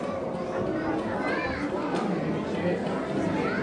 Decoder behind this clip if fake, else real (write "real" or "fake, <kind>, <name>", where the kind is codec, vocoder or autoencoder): real